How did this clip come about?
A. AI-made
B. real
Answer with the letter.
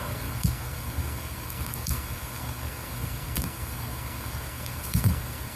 A